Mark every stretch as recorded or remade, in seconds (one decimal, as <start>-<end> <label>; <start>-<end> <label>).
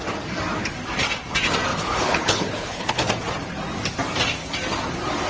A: 0.0-1.7 recorded; 1.7-3.1 remade; 3.1-5.3 recorded